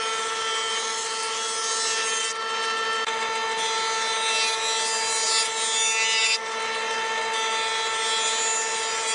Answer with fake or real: real